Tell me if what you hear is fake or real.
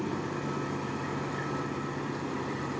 real